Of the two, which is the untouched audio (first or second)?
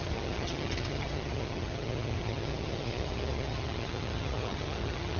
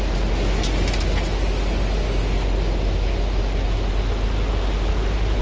second